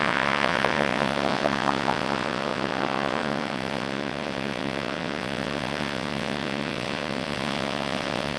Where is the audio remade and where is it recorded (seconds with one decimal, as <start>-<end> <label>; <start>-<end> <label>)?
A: 0.0-8.4 remade